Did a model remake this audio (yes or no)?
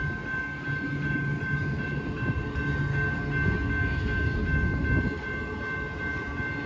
no